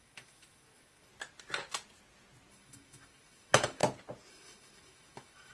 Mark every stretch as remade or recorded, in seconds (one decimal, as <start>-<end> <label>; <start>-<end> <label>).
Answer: 0.0-1.1 remade; 1.1-2.5 recorded; 2.5-3.8 remade; 3.8-4.3 recorded; 4.3-5.5 remade